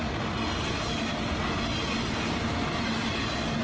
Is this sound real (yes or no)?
yes